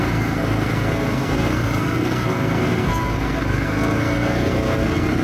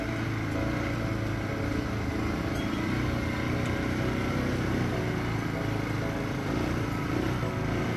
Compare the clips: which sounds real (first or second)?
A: second